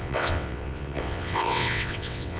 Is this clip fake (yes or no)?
yes